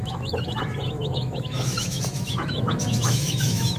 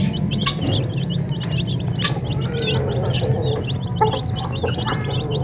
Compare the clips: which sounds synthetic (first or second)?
first